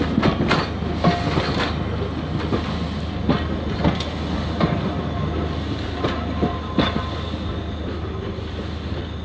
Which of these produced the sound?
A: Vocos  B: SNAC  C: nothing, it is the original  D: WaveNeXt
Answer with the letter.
C